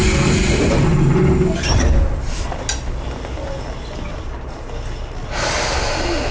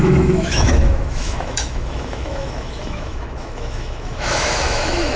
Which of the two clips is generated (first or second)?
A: second